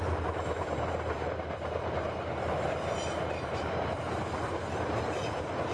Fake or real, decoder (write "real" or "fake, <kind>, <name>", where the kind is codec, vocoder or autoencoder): fake, vocoder, BigVGAN v2